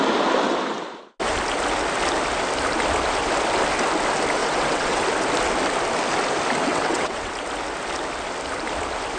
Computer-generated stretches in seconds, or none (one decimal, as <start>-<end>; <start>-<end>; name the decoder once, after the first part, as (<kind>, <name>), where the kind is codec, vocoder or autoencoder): 4.4-5.0 (vocoder, WaveNeXt); 6.7-7.3